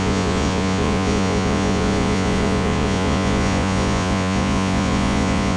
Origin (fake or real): fake